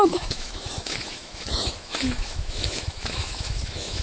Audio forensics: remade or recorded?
remade